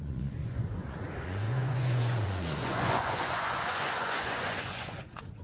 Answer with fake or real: fake